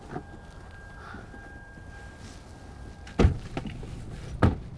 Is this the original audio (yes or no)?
yes